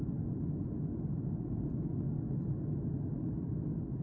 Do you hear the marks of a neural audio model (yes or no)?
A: no